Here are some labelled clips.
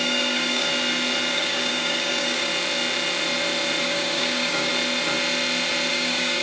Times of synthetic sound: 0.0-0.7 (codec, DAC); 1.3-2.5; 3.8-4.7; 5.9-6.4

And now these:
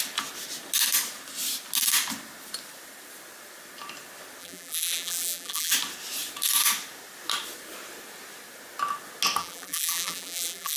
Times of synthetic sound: 4.4-5.7 (vocoder, BigVGAN v2); 9.4-10.8

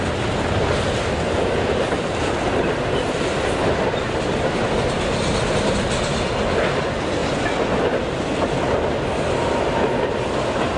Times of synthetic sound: none

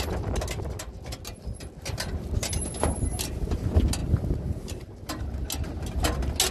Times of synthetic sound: none

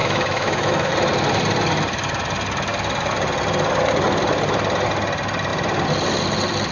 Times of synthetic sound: 0.0-0.9 (autoencoder, DAC-VAE)

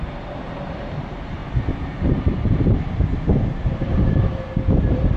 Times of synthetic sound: 0.0-5.2 (vocoder, BigVGAN v2)

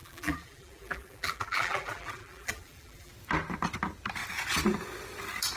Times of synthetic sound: 0.0-3.1 (vocoder, BigVGAN v2)

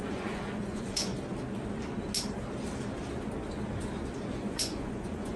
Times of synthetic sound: 0.0-1.1 (vocoder, Vocos); 4.3-5.4